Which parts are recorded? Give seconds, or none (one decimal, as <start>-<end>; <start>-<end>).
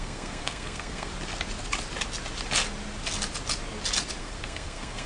1.1-4.2